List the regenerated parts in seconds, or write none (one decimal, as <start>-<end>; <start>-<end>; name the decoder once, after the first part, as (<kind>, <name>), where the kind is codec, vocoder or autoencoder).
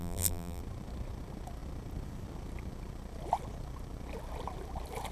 0.0-0.6 (vocoder, BigVGAN v2)